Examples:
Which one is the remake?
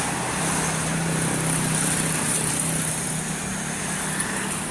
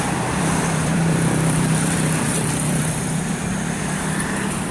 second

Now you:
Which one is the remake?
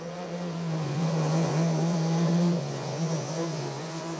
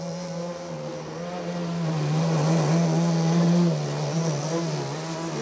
first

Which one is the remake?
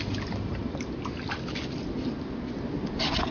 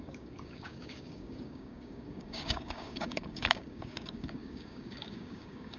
second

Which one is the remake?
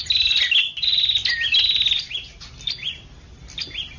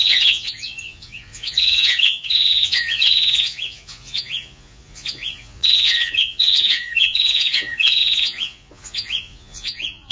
second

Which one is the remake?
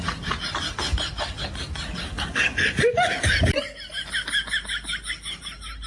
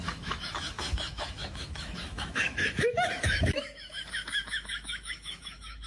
second